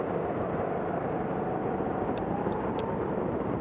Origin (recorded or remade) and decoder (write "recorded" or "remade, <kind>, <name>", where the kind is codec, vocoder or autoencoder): recorded